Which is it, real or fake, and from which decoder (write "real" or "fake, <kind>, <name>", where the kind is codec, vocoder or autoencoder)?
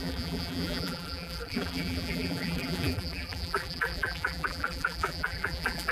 fake, vocoder, BigVGAN v2